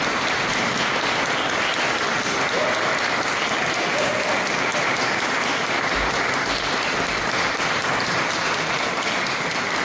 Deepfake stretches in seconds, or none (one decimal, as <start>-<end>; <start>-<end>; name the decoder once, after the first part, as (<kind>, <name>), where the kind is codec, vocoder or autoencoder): none